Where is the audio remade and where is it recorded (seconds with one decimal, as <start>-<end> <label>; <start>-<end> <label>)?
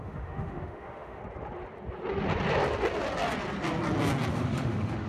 0.0-1.2 remade; 1.2-4.3 recorded; 4.3-5.1 remade